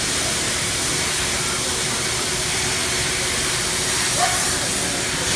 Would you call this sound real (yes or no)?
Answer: yes